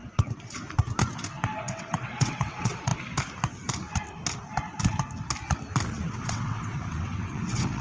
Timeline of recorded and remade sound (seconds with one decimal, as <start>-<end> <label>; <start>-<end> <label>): 0.0-1.6 recorded; 1.6-2.9 remade; 2.9-5.9 recorded; 5.9-7.8 remade